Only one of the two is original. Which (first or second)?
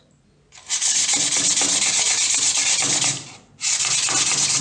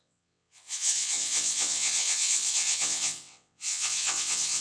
first